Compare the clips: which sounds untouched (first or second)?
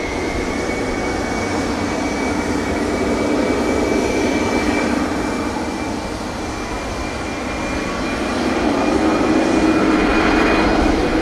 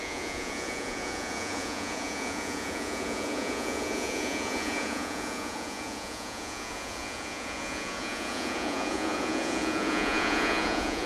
first